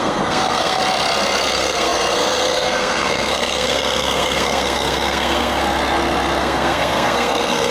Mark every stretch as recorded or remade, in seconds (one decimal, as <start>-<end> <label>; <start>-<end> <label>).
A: 0.0-0.8 remade; 0.8-1.5 recorded; 1.5-5.6 remade; 5.6-6.4 recorded; 6.4-7.7 remade